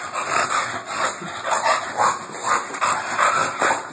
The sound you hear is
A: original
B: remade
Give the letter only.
A